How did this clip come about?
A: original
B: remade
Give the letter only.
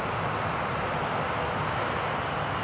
A